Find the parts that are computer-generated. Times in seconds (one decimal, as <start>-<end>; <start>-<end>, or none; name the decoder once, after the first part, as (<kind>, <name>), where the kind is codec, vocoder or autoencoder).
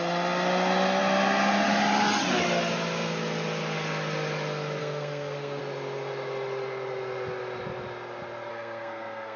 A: 4.8-5.6 (codec, SNAC); 8.5-9.4